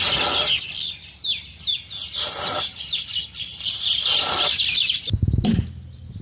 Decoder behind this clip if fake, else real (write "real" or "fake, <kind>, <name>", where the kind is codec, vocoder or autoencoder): real